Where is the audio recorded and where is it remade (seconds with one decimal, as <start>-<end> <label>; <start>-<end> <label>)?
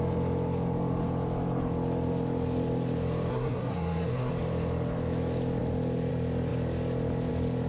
0.0-3.3 recorded; 3.3-4.3 remade; 4.3-7.7 recorded